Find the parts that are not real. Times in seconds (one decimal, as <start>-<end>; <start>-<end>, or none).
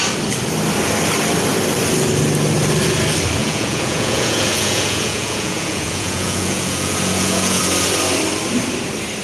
3.4-7.6